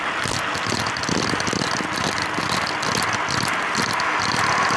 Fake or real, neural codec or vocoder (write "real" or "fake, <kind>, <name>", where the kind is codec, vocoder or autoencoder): real